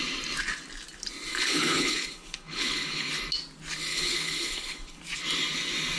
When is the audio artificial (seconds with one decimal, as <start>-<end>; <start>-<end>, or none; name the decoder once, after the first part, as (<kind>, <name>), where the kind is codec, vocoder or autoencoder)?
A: 1.3-3.1 (codec, HILCodec); 3.9-5.0